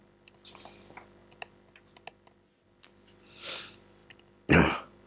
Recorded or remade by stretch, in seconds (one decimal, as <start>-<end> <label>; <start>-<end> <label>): 0.0-5.1 recorded